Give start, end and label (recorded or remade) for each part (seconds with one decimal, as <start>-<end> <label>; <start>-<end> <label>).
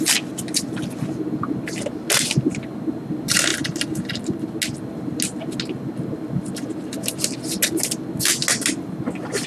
0.0-9.5 recorded